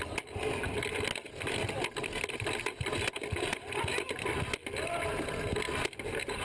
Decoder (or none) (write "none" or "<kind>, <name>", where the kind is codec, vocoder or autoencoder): none